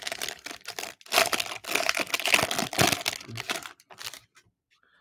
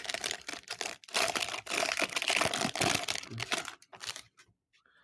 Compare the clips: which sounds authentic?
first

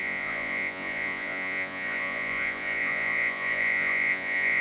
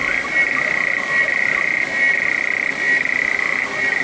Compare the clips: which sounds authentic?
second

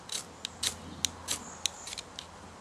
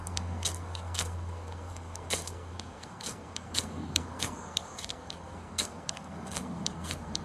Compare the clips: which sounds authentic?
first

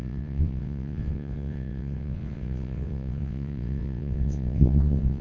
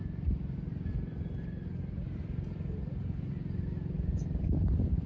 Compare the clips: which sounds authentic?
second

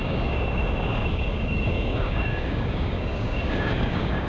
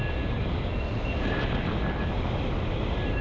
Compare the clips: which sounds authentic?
second